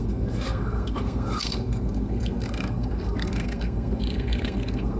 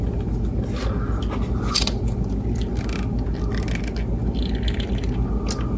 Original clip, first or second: second